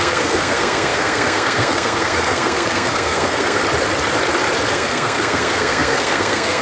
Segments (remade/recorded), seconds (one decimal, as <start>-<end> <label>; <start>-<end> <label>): 0.0-3.6 remade; 3.6-4.7 recorded; 4.7-6.6 remade